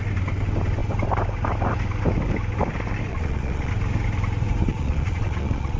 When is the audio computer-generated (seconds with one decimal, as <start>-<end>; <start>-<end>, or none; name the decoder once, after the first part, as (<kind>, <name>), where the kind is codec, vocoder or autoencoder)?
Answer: 3.1-3.7 (vocoder, Vocos); 4.7-5.8